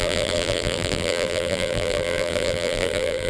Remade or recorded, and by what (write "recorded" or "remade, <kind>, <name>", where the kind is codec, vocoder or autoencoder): remade, vocoder, BigVGAN v2